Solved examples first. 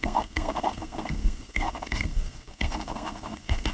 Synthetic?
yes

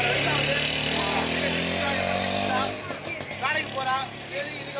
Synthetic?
no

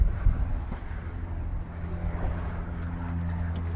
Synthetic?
no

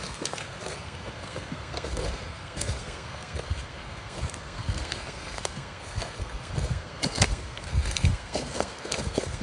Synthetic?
yes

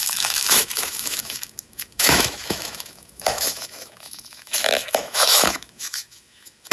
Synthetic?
yes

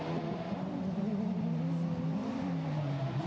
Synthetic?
no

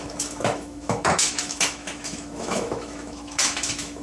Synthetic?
yes